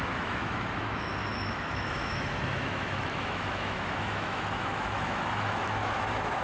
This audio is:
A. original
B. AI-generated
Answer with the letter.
B